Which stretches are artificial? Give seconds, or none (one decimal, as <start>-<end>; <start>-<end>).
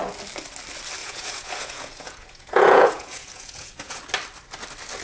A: 1.0-4.0